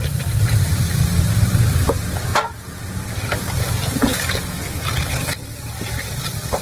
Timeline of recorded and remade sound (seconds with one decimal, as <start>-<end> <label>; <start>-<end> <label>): 0.0-2.3 remade; 2.3-3.4 recorded; 3.4-4.1 remade; 4.1-6.0 recorded; 6.0-6.6 remade